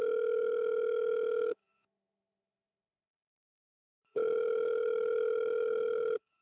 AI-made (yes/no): yes